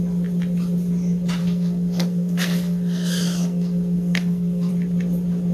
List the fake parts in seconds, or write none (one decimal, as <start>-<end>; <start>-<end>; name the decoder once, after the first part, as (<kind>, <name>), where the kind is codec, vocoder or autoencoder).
1.4-4.7 (codec, SNAC)